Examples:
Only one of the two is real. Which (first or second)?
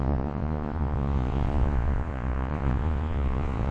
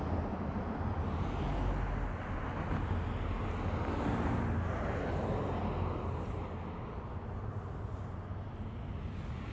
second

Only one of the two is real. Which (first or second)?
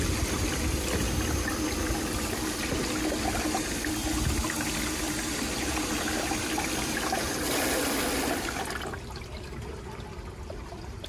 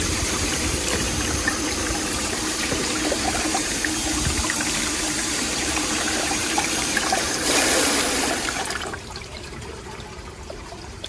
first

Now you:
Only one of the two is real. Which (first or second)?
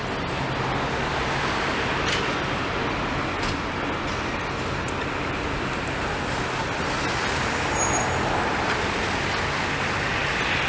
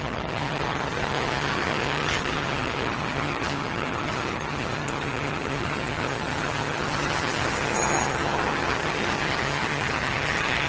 first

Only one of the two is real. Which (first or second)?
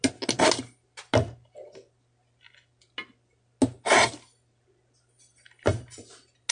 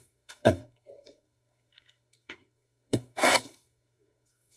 first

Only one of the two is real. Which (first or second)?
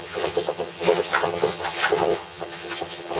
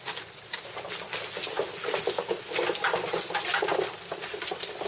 second